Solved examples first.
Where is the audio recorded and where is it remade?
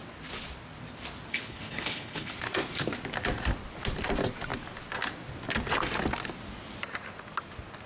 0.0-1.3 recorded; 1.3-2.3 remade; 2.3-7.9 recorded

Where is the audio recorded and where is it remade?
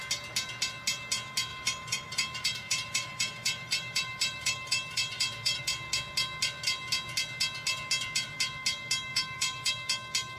0.0-1.5 recorded; 1.5-5.6 remade; 5.6-9.1 recorded; 9.1-9.7 remade; 9.7-10.4 recorded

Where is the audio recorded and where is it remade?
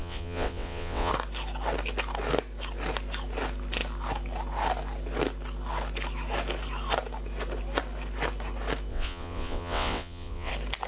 0.0-1.1 remade; 1.1-8.9 recorded; 8.9-10.5 remade; 10.5-10.9 recorded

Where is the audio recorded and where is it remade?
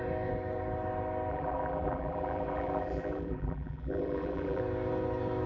0.0-1.3 recorded; 1.3-4.6 remade; 4.6-5.5 recorded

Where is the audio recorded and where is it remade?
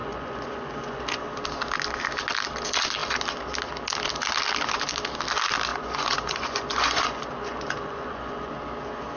0.0-1.0 remade; 1.0-5.7 recorded; 5.7-8.5 remade; 8.5-9.2 recorded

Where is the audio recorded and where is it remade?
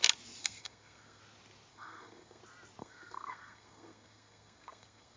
0.0-0.4 recorded; 0.4-1.2 remade; 1.2-1.7 recorded; 1.7-2.4 remade; 2.4-2.8 recorded; 2.8-5.2 remade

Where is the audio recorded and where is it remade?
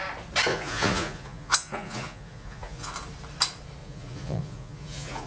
0.0-0.5 recorded; 0.5-2.9 remade; 2.9-3.8 recorded; 3.8-5.3 remade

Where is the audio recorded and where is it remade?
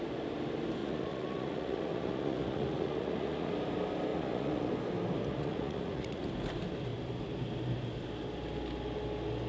0.0-0.8 recorded; 0.8-3.5 remade; 3.5-4.1 recorded; 4.1-4.7 remade; 4.7-5.2 recorded; 5.2-6.3 remade; 6.3-9.5 recorded